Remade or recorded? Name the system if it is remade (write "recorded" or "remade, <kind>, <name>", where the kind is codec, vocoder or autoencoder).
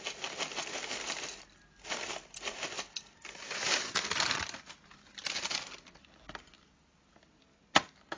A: recorded